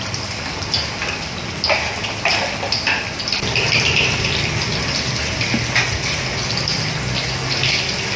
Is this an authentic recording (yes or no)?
yes